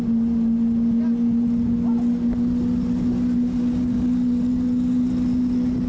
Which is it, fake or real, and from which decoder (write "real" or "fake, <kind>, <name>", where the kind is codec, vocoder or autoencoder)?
real